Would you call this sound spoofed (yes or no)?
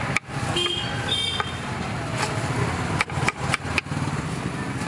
no